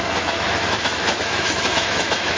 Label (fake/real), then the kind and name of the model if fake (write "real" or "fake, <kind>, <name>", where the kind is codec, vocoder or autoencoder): fake, autoencoder, DAC-VAE